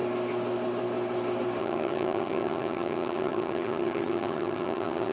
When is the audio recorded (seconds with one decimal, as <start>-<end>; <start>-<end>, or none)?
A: 0.0-1.6

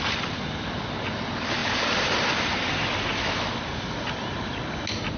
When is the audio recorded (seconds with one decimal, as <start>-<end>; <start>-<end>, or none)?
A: 0.0-5.2

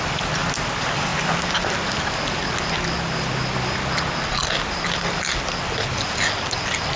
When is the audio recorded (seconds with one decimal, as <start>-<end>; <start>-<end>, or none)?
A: 0.0-7.0

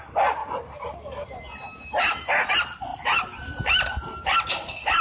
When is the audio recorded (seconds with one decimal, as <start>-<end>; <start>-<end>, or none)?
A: 0.0-5.0

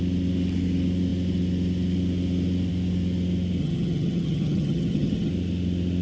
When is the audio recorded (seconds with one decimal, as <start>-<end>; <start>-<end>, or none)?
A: 0.0-3.6; 5.3-6.0

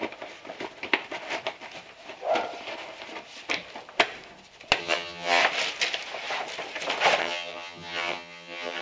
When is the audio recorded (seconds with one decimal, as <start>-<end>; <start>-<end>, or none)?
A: 0.0-4.8; 5.4-7.2

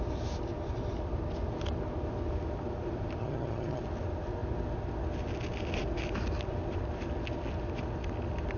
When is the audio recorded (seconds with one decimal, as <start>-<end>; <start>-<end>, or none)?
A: 0.0-3.2; 3.8-8.6

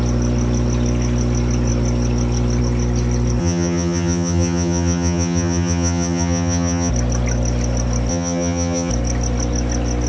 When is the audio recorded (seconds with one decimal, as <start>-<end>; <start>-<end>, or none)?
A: 0.0-3.4; 6.9-8.1; 8.9-10.1